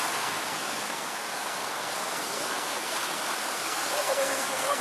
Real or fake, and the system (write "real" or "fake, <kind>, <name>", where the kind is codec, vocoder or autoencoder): fake, codec, SNAC